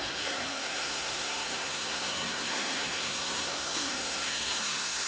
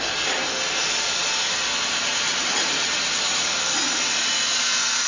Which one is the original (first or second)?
second